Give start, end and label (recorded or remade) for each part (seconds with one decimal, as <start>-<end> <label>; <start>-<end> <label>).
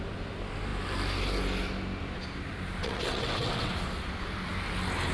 0.0-2.8 recorded; 2.8-3.7 remade; 3.7-5.1 recorded